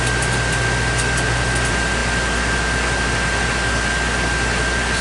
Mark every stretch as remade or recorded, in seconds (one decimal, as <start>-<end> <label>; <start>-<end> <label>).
0.0-5.0 recorded